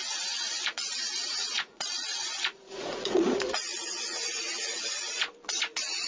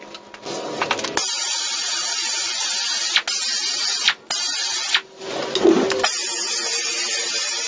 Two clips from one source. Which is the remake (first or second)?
first